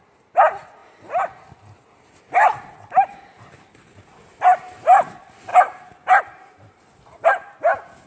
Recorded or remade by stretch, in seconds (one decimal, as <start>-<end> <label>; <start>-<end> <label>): 0.0-8.1 recorded